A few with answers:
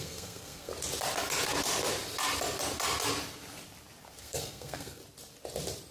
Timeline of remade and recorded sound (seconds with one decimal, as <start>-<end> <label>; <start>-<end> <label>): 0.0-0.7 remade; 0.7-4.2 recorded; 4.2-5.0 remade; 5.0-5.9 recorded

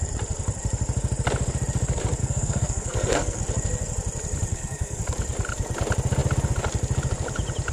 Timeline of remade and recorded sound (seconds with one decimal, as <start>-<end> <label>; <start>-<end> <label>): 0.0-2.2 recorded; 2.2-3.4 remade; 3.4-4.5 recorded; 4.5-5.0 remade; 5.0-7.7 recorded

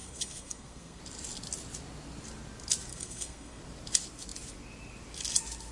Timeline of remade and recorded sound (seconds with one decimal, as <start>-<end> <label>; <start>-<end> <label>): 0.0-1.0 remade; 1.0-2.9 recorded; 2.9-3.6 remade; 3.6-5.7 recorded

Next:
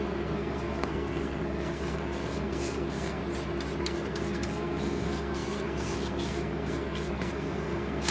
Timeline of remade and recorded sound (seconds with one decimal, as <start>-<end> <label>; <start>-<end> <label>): 0.0-3.2 remade; 3.2-3.8 recorded; 3.8-8.1 remade

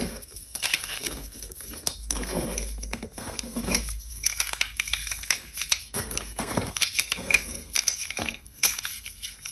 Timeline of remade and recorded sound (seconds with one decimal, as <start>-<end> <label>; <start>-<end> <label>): 0.0-9.5 remade

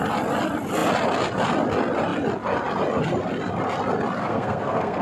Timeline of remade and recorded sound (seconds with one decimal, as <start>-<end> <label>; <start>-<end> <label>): 0.0-4.2 recorded; 4.2-5.0 remade

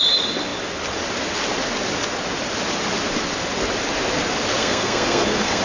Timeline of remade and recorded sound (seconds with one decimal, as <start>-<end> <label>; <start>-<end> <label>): 0.0-4.6 recorded; 4.6-5.6 remade